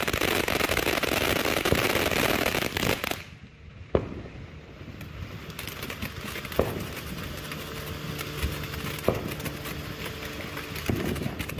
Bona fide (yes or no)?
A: yes